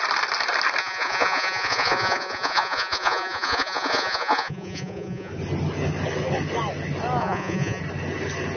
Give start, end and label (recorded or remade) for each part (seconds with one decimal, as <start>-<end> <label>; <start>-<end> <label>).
0.0-0.8 recorded; 0.8-5.3 remade; 5.3-7.2 recorded; 7.2-7.8 remade; 7.8-8.6 recorded